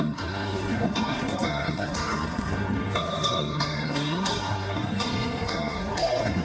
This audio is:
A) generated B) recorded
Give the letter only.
A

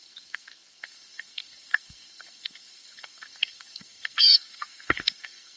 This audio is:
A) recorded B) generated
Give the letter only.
B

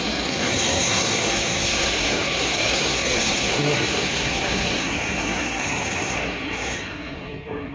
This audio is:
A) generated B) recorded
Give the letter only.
A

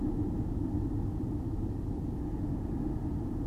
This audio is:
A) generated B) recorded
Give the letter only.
B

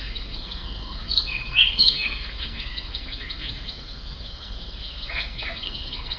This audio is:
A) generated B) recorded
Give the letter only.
A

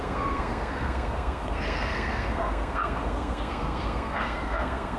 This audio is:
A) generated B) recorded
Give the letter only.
A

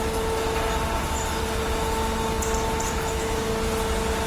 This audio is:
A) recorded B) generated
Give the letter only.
A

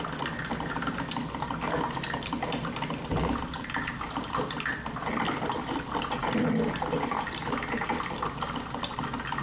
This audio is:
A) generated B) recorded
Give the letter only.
B